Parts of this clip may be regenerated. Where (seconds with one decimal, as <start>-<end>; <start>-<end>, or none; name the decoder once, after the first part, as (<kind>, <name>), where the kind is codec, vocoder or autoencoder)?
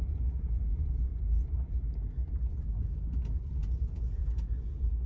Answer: 0.0-1.1 (vocoder, Vocos); 3.5-4.2